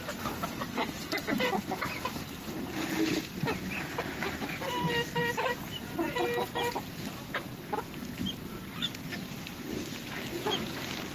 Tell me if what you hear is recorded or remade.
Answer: recorded